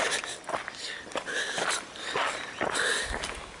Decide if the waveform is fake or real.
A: real